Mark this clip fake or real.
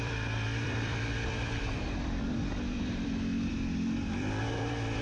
fake